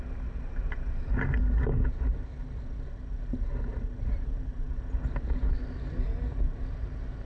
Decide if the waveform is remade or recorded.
recorded